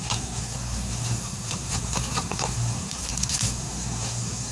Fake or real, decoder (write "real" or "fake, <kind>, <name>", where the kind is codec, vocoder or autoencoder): fake, codec, SNAC